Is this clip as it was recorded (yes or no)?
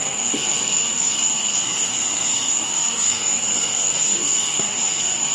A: no